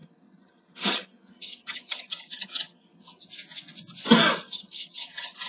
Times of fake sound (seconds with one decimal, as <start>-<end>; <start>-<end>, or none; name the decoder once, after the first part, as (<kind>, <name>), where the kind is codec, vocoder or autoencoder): 0.0-3.3 (vocoder, HiFi-GAN); 4.4-5.5